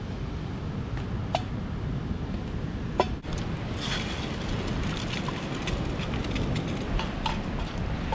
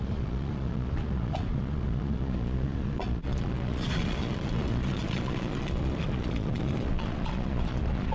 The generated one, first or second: second